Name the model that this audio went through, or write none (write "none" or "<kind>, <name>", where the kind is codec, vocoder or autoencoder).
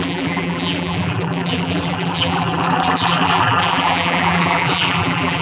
vocoder, BigVGAN v2